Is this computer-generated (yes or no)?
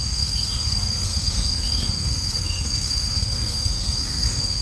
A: yes